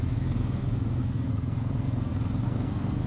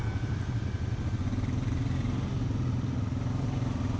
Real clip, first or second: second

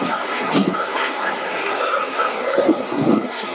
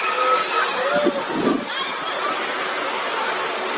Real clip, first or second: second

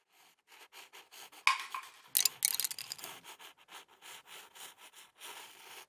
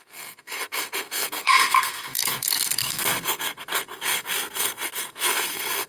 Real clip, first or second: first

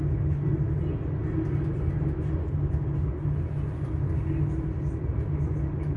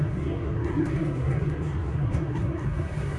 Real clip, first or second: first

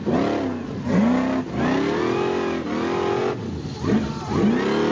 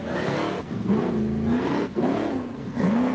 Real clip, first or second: first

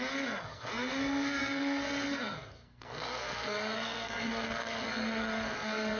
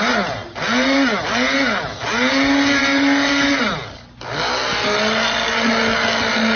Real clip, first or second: second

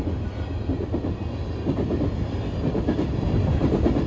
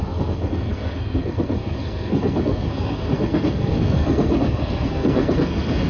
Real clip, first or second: first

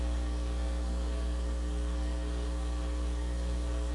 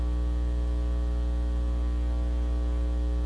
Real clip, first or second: second